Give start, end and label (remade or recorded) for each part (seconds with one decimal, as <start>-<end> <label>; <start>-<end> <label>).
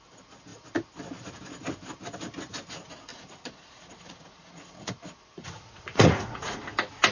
0.0-3.1 recorded; 3.1-6.6 remade; 6.6-7.1 recorded